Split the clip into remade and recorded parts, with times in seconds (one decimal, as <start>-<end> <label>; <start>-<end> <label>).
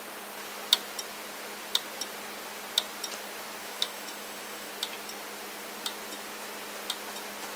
0.0-3.6 recorded; 3.6-4.7 remade; 4.7-7.6 recorded